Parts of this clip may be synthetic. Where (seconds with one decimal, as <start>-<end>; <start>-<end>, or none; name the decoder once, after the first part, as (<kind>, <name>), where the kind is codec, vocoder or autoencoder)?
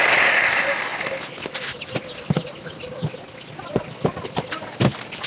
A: none